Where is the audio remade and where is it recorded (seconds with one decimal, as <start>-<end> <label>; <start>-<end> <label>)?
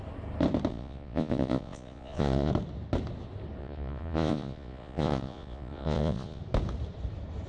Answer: 0.0-0.7 recorded; 0.7-2.5 remade; 2.5-3.6 recorded; 3.6-6.4 remade; 6.4-7.5 recorded